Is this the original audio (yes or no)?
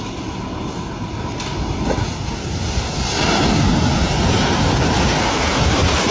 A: yes